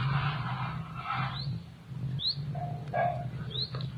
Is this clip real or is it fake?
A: real